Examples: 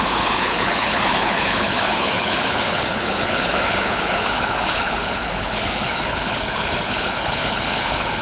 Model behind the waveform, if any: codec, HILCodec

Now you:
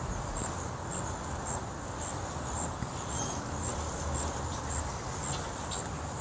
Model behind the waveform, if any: none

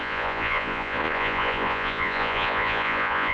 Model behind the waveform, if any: vocoder, Vocos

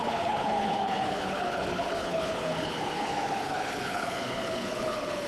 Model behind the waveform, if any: codec, HILCodec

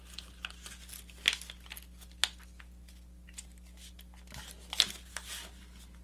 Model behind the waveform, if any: none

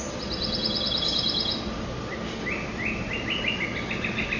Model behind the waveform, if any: none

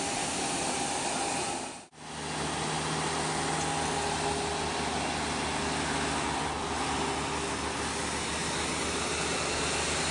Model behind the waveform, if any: none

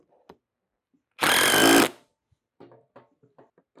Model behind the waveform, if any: none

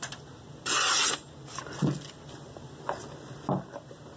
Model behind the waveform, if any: none